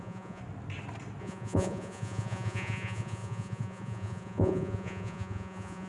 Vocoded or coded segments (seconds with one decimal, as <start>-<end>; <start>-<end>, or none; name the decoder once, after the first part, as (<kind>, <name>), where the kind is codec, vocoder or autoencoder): 0.0-0.4 (vocoder, Vocos); 1.2-5.9